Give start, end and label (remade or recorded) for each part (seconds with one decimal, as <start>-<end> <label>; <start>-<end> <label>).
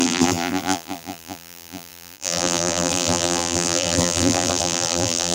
0.0-5.3 remade